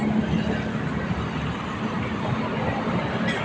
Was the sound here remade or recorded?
recorded